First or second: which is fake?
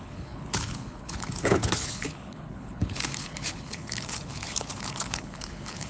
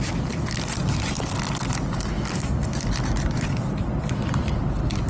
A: first